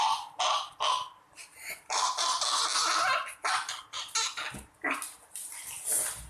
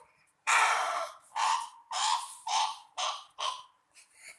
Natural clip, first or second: first